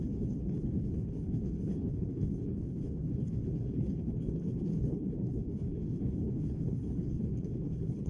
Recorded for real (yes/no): no